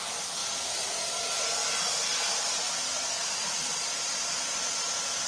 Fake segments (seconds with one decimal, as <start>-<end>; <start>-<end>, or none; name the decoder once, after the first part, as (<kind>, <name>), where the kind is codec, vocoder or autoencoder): 0.4-0.9 (vocoder, BigVGAN v2); 1.6-4.8

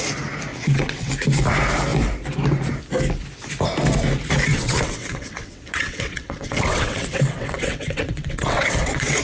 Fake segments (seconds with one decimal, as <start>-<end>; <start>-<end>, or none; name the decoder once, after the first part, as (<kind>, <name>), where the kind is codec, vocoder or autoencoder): 0.5-1.1 (vocoder, WaveNeXt); 4.5-9.2

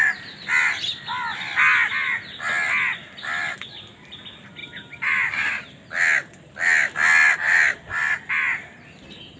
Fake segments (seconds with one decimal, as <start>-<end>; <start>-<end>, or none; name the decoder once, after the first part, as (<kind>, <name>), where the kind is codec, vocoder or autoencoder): none

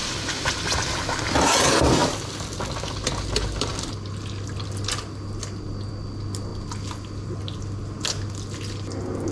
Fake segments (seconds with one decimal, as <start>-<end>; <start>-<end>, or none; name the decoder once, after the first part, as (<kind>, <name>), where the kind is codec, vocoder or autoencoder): none